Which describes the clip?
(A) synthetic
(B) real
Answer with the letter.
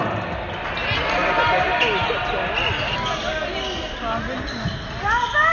B